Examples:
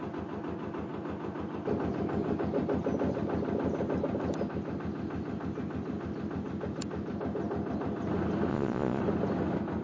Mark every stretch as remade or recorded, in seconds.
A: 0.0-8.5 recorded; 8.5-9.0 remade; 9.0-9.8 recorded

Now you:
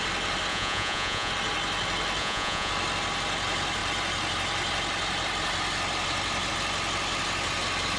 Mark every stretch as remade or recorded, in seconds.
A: 0.0-0.5 recorded; 0.5-1.3 remade; 1.3-2.2 recorded; 2.2-2.7 remade; 2.7-8.0 recorded

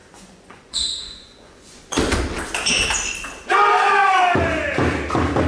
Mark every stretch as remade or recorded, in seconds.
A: 0.0-2.0 remade; 2.0-5.5 recorded